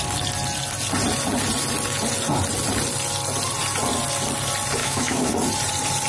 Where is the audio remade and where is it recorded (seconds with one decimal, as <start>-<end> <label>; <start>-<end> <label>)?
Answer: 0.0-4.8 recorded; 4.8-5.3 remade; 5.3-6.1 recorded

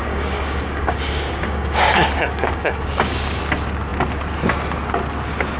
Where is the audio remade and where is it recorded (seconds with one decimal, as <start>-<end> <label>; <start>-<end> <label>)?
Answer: 0.0-3.4 remade; 3.4-5.6 recorded

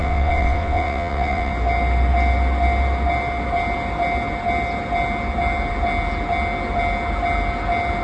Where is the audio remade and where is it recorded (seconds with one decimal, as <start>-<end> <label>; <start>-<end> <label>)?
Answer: 0.0-1.5 remade; 1.5-8.0 recorded